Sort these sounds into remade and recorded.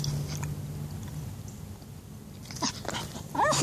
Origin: recorded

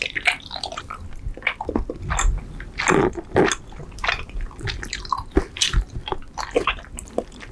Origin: recorded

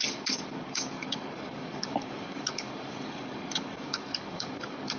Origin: remade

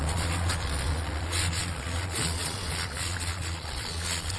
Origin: remade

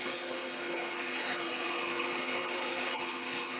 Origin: remade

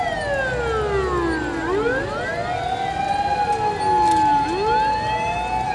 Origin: recorded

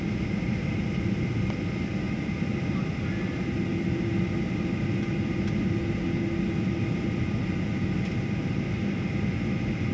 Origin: recorded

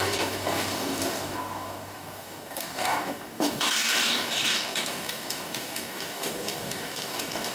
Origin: remade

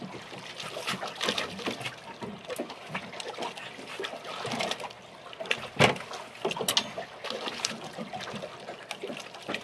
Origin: recorded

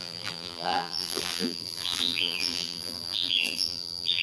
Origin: remade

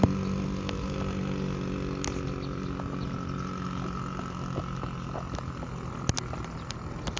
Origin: recorded